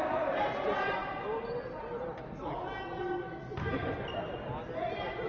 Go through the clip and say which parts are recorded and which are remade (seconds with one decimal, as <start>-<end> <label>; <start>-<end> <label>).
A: 0.0-5.3 recorded